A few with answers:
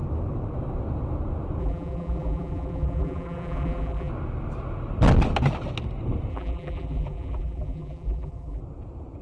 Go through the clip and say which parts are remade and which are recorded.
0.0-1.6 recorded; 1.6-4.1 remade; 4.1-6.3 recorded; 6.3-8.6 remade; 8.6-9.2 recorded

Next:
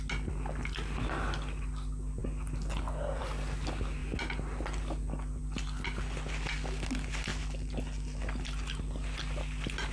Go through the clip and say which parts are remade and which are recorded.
0.0-9.9 recorded

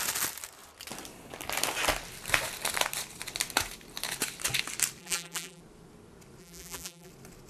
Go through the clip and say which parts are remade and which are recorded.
0.0-5.0 recorded; 5.0-5.6 remade; 5.6-6.4 recorded; 6.4-7.1 remade; 7.1-7.5 recorded

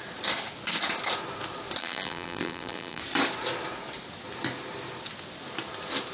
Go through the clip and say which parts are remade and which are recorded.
0.0-1.8 recorded; 1.8-3.0 remade; 3.0-6.1 recorded

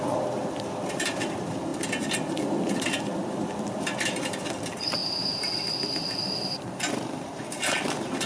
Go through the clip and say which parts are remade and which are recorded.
0.0-8.3 remade